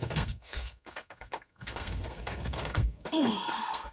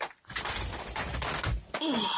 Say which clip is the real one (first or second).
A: second